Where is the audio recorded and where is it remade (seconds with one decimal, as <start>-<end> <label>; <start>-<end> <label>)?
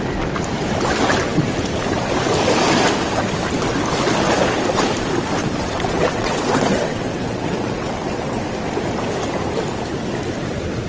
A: 0.0-5.4 recorded; 5.4-8.4 remade; 8.4-10.9 recorded